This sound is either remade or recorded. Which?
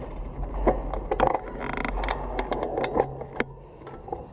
recorded